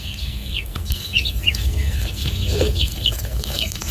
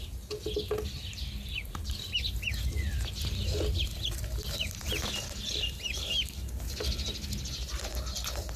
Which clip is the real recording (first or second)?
second